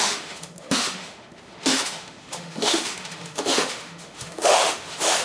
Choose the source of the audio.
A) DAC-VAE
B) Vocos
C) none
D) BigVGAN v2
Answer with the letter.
A